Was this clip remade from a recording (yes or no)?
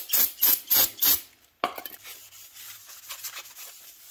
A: no